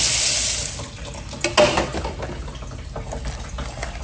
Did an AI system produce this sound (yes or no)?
no